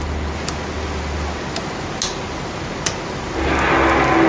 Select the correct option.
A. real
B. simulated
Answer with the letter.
A